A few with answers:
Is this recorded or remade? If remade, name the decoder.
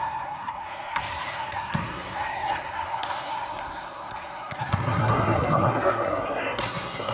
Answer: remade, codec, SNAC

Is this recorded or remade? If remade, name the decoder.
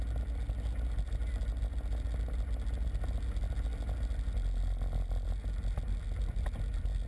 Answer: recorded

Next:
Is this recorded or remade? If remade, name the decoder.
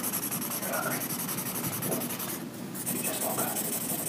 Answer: recorded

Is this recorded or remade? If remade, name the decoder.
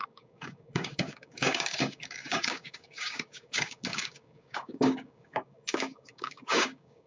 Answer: remade, codec, DAC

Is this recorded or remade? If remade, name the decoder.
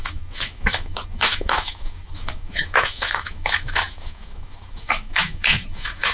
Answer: remade, autoencoder, DAC-VAE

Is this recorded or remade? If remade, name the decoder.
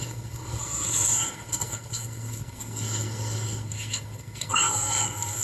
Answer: remade, codec, SNAC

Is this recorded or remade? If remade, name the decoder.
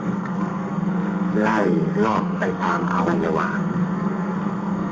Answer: remade, codec, SNAC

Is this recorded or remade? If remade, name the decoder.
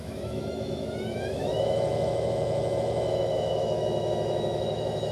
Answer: remade, autoencoder, DAC-VAE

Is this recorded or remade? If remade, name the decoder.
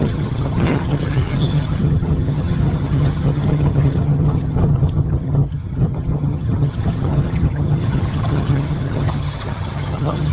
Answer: remade, vocoder, HiFi-GAN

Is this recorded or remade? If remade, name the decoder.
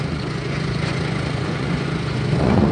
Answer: remade, vocoder, Vocos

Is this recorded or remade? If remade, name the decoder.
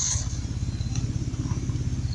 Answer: recorded